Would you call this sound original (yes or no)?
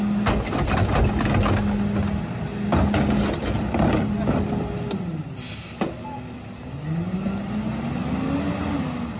yes